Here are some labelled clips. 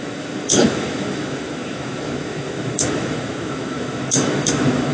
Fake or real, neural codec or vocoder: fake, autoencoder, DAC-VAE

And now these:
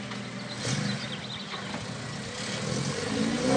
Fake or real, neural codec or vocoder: real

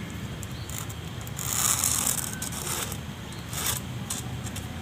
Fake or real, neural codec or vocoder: real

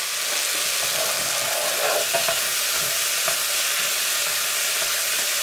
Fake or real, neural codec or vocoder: real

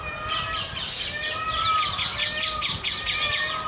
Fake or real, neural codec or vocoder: real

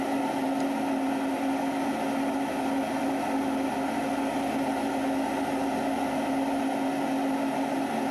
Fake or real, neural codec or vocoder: real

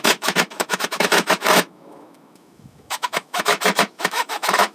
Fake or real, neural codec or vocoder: fake, autoencoder, DAC-VAE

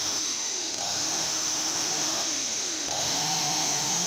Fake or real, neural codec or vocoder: fake, autoencoder, DAC-VAE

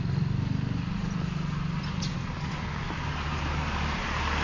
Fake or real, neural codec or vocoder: real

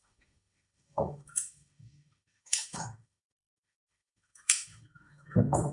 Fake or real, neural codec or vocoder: fake, autoencoder, DAC-VAE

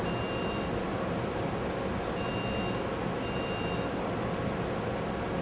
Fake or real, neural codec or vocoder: real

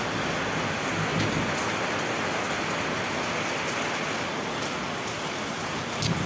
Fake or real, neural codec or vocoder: real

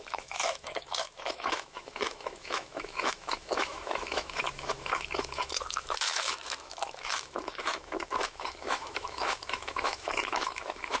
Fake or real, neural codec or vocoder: fake, autoencoder, DAC-VAE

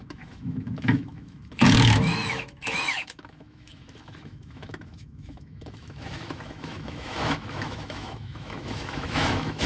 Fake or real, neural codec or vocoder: fake, autoencoder, DAC-VAE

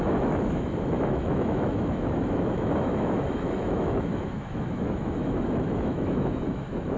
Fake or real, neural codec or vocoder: fake, autoencoder, DAC-VAE